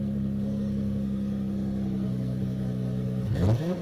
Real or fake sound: fake